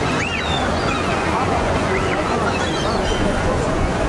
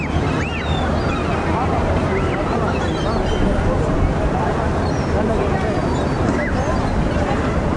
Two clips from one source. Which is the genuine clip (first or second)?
second